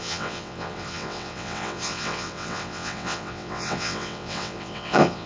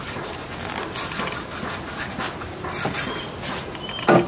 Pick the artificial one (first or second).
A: first